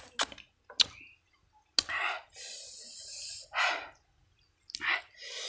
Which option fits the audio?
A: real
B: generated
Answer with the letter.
A